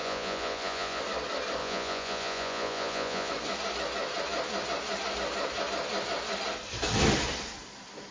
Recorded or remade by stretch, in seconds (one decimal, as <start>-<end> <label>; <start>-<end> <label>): 0.0-1.0 remade; 1.0-1.6 recorded; 1.6-3.3 remade; 3.3-8.1 recorded